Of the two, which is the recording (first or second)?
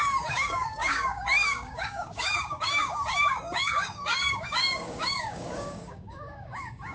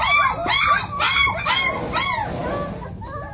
second